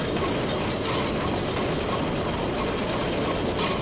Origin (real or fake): real